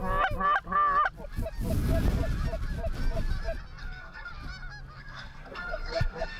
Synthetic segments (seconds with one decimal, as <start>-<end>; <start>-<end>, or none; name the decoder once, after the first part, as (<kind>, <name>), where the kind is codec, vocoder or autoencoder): 3.8-4.3 (codec, SNAC); 5.0-6.4